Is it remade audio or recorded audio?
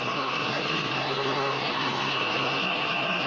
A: remade